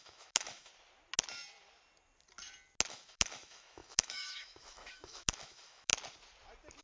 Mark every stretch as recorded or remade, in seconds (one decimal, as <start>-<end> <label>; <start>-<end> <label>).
0.0-0.7 remade; 0.7-2.9 recorded; 2.9-5.9 remade; 5.9-6.8 recorded